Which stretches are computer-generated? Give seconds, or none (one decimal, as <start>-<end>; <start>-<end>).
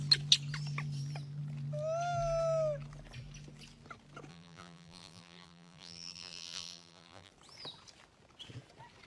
4.3-7.3